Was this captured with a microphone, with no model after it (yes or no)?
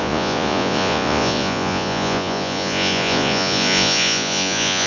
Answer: no